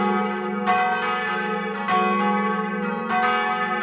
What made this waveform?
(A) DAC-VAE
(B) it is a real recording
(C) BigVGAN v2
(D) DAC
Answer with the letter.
B